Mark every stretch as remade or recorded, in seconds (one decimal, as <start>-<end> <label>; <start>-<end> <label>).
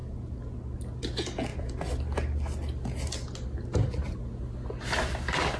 0.0-5.6 recorded